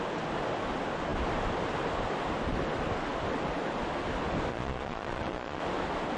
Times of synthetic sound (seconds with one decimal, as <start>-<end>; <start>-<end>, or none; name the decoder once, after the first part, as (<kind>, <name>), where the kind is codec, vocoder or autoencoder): 4.5-5.6 (vocoder, Vocos)